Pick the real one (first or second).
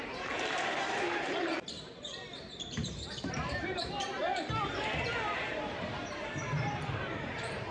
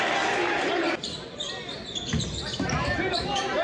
second